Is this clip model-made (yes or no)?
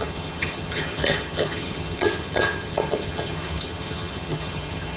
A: yes